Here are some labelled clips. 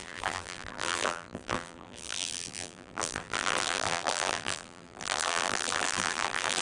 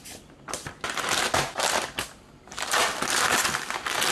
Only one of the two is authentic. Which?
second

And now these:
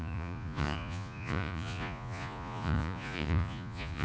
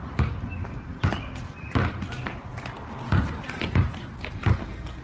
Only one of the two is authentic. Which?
second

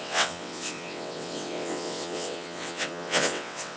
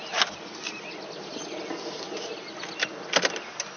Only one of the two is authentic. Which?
second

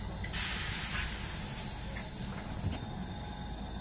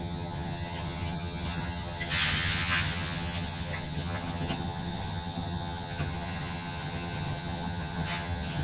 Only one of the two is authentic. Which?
first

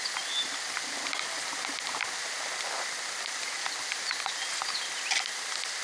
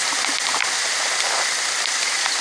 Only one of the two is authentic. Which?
first